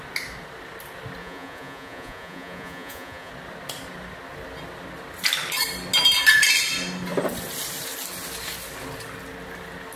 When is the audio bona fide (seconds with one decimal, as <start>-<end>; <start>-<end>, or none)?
0.0-1.2; 3.3-10.0